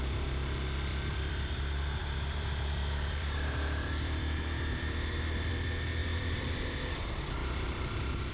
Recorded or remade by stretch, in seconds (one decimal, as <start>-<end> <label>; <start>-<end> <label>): 0.0-0.9 recorded; 0.9-5.5 remade; 5.5-6.0 recorded; 6.0-7.0 remade; 7.0-7.4 recorded; 7.4-8.3 remade